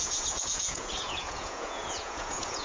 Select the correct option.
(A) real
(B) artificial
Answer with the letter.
B